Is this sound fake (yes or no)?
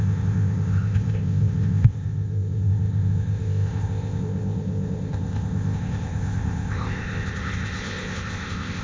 yes